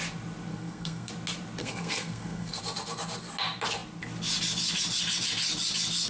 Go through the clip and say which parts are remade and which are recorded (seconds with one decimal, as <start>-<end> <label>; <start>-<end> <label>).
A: 0.0-0.5 recorded; 0.5-1.1 remade; 1.1-1.6 recorded; 1.6-2.6 remade; 2.6-6.1 recorded